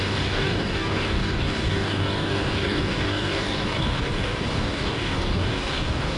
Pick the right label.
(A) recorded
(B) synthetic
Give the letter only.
B